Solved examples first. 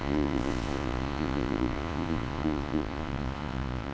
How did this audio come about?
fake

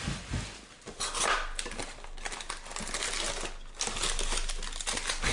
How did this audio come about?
real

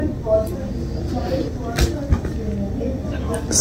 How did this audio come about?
real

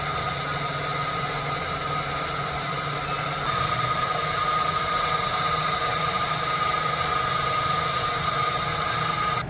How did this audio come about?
real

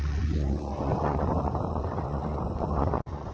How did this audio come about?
fake